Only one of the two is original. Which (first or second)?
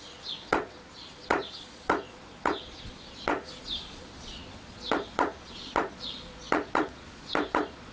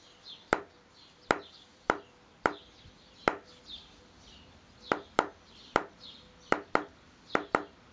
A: second